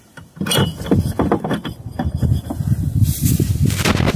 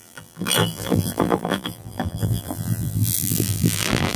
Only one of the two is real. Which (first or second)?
first